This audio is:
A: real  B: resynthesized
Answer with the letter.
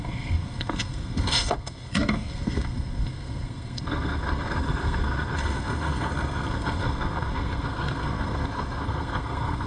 B